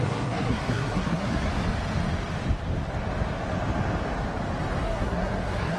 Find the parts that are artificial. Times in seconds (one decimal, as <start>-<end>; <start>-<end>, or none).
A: 0.0-1.5; 4.8-5.8